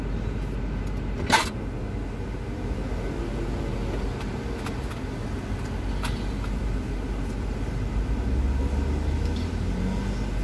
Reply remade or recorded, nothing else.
recorded